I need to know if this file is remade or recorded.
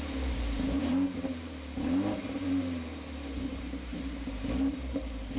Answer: remade